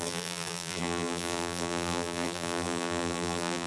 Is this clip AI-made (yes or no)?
yes